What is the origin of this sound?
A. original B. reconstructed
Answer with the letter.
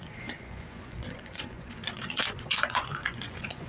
B